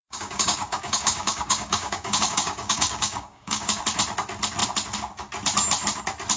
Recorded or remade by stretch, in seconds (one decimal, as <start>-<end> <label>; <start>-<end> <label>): 0.0-3.8 remade; 3.8-6.4 recorded